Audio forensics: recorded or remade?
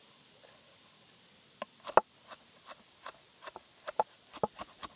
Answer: recorded